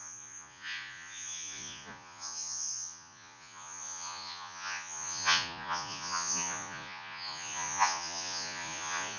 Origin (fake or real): fake